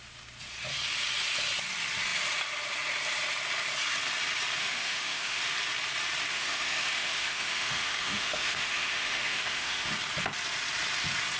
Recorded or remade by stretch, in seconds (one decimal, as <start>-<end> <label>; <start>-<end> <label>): 0.0-4.6 recorded; 4.6-5.4 remade; 5.4-6.3 recorded; 6.3-9.9 remade; 9.9-11.4 recorded